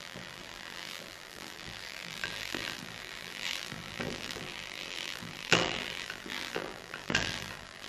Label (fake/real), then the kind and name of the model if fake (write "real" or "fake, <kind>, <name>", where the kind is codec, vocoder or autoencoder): fake, vocoder, BigVGAN v2